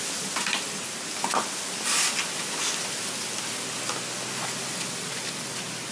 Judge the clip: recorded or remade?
recorded